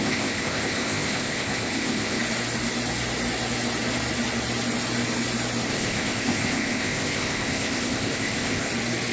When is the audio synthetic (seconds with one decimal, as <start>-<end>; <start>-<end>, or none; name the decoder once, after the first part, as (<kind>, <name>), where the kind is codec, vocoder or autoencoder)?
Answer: 0.0-2.2 (codec, ZipCodec); 5.7-8.7